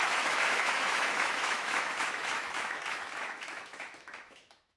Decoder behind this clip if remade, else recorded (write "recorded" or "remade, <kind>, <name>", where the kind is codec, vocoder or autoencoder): remade, autoencoder, DAC-VAE